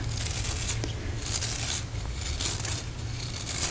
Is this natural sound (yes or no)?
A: yes